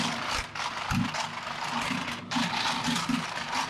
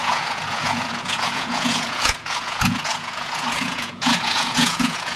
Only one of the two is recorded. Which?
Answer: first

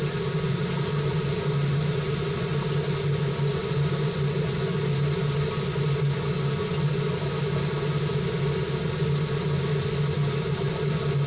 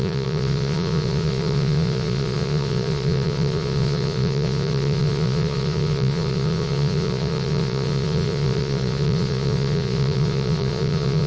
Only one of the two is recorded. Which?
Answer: first